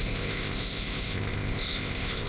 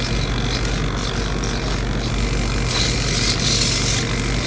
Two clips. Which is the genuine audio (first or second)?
second